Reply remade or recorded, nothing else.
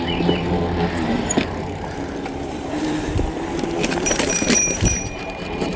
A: remade